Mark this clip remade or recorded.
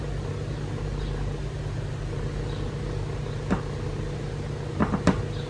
recorded